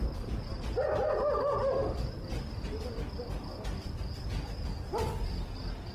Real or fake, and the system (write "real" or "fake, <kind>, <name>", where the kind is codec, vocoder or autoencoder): real